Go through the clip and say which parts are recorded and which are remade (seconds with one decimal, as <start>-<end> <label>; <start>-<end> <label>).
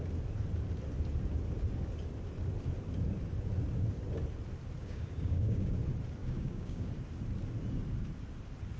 0.0-4.8 recorded; 4.8-5.7 remade; 5.7-6.2 recorded; 6.2-6.9 remade; 6.9-8.8 recorded